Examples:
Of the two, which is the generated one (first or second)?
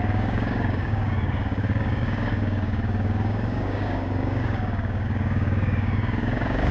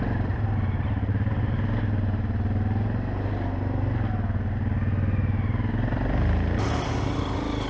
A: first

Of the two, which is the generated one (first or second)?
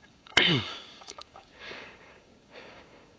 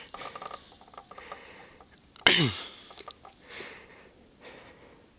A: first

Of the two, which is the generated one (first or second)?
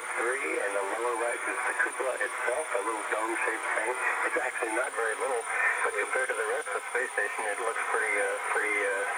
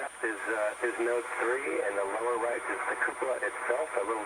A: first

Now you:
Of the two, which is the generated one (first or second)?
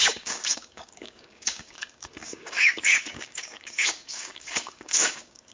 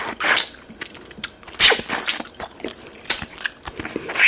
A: first